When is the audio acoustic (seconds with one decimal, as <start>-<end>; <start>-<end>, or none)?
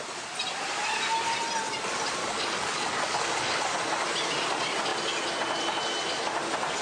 0.0-2.2; 3.5-6.8